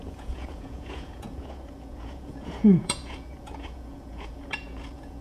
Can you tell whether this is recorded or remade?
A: remade